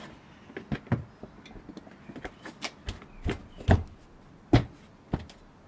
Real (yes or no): yes